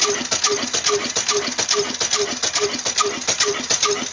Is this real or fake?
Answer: real